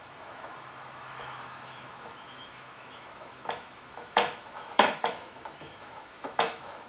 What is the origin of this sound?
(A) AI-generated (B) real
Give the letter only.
A